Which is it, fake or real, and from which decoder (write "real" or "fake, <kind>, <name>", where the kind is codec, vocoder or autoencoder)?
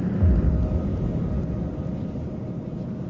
real